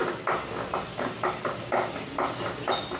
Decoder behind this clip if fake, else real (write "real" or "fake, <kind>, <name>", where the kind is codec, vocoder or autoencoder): real